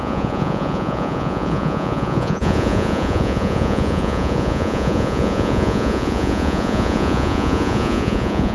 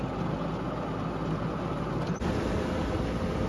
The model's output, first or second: first